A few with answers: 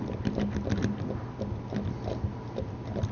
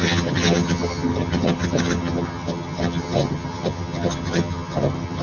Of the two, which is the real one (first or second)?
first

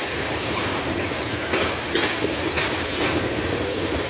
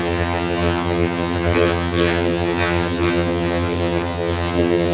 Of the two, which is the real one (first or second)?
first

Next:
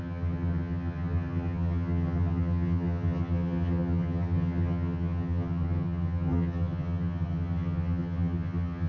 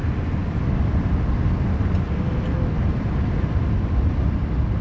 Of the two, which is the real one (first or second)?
second